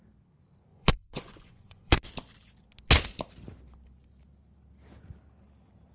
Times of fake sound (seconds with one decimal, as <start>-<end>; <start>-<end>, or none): 0.7-2.0